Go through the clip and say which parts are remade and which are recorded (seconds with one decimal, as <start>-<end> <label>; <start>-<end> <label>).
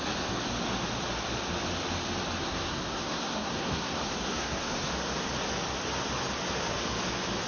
0.0-2.4 recorded; 2.4-4.9 remade; 4.9-7.5 recorded